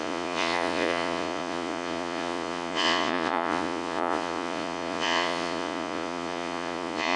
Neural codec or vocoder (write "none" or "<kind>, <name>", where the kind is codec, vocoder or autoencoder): vocoder, Vocos